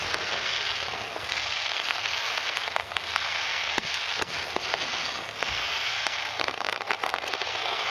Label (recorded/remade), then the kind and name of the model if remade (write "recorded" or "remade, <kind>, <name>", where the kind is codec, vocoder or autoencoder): remade, codec, SNAC